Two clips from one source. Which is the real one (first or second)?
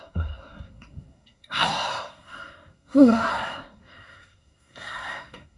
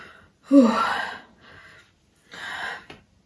second